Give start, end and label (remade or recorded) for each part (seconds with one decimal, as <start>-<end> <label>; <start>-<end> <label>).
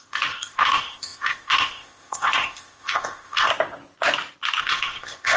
0.0-3.5 remade; 3.5-4.6 recorded; 4.6-5.4 remade